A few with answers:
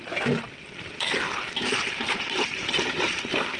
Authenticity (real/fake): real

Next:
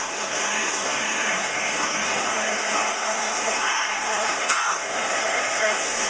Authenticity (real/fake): fake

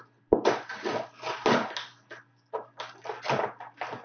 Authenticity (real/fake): real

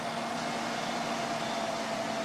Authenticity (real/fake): real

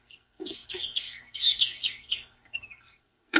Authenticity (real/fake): fake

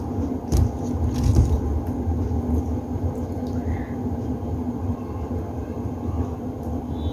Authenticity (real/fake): real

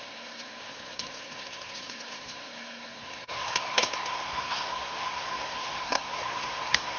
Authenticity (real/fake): fake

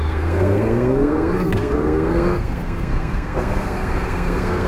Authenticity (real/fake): fake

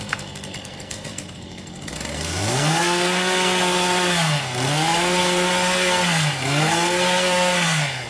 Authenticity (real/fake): fake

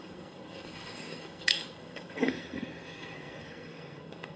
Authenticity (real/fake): fake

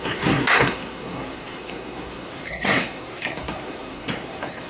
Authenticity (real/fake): fake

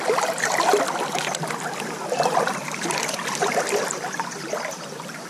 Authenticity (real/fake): real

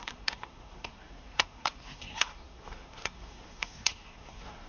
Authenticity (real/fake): fake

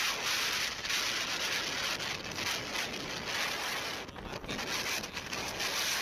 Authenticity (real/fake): real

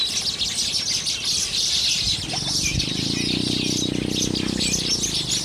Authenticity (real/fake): real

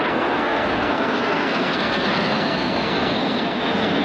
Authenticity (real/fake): fake